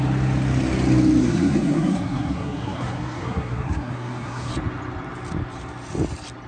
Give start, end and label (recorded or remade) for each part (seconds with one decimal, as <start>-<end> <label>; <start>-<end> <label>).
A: 0.0-1.2 recorded; 1.2-4.5 remade; 4.5-6.5 recorded